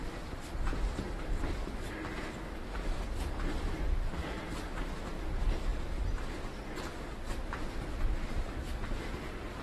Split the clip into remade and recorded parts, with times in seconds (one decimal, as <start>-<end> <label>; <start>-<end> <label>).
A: 0.0-0.7 remade; 0.7-3.4 recorded; 3.4-5.7 remade; 5.7-6.8 recorded; 6.8-9.6 remade